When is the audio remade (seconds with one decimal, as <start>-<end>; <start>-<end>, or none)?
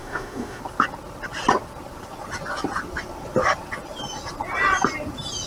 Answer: 0.0-0.6